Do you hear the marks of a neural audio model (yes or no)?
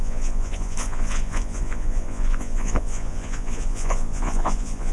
yes